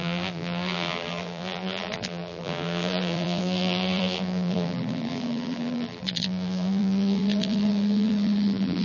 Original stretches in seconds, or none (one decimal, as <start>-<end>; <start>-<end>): none